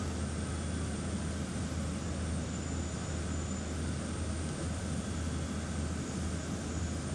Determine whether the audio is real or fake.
real